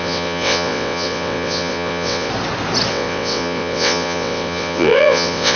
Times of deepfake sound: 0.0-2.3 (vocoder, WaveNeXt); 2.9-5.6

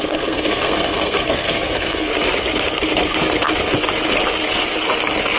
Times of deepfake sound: 0.0-2.1 (codec, SNAC)

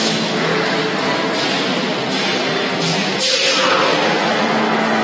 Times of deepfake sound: 0.0-0.5 (autoencoder, DAC-VAE); 2.1-2.9; 4.2-5.0

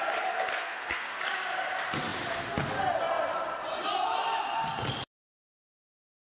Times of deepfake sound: 0.5-1.2 (codec, SNAC)

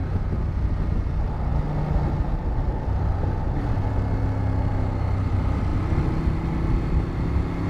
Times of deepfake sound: none

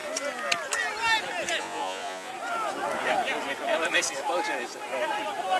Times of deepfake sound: 1.6-2.3 (vocoder, Vocos)

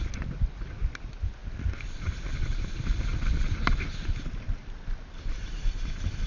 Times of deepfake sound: none